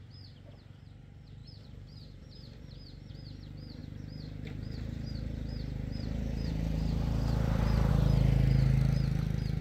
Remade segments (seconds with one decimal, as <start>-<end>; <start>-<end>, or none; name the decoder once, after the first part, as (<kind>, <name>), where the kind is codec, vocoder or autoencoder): 1.4-3.1 (vocoder, BigVGAN v2); 3.8-7.9